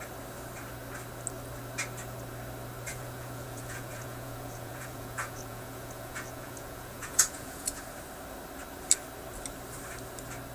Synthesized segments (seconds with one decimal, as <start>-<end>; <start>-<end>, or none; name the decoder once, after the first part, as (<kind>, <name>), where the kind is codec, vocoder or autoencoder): 2.9-7.8 (vocoder, Vocos)